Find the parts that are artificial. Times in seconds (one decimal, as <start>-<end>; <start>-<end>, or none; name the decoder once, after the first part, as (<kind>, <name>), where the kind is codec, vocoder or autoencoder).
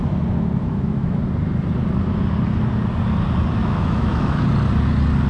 0.6-1.2 (autoencoder, DAC-VAE); 3.6-4.4